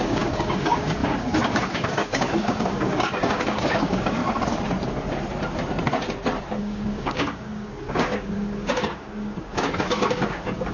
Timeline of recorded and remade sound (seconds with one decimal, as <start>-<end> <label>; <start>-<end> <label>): 0.0-4.2 remade; 4.2-6.6 recorded; 6.6-10.7 remade